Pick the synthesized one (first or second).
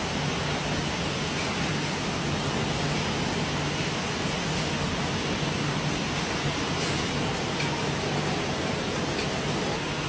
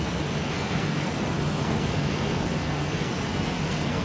second